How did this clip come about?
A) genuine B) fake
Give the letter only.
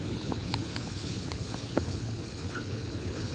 B